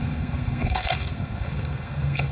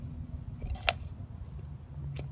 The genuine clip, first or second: second